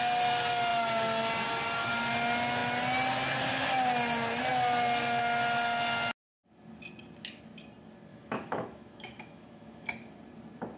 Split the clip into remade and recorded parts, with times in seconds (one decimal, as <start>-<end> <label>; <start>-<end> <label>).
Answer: 0.0-8.1 recorded; 8.1-9.9 remade; 9.9-10.8 recorded